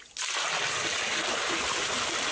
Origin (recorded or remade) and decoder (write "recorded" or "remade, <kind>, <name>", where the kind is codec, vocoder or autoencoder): recorded